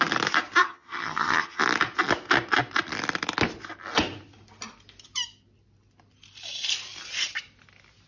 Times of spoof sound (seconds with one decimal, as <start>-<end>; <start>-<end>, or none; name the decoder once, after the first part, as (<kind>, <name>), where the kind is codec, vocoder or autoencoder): 0.6-1.6 (vocoder, HiFi-GAN)